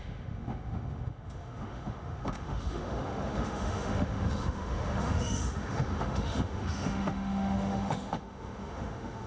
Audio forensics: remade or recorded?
remade